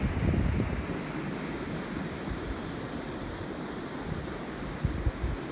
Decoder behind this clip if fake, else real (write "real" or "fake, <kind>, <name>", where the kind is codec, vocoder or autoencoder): real